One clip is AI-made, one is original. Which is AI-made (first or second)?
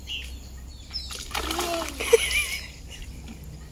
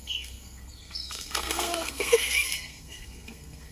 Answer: second